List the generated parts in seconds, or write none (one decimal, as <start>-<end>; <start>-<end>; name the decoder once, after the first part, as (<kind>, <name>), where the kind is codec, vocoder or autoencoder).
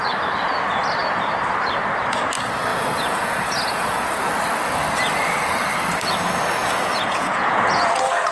2.7-4.3 (vocoder, Vocos); 6.6-8.3